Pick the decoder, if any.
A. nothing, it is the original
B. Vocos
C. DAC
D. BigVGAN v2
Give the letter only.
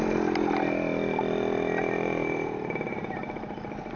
A